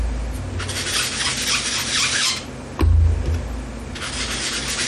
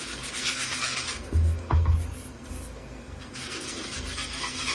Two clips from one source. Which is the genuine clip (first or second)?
first